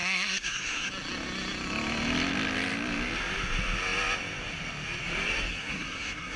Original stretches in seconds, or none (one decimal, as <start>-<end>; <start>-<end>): 0.9-5.5